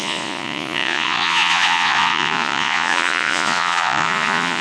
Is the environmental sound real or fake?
fake